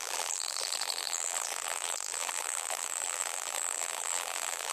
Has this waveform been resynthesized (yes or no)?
yes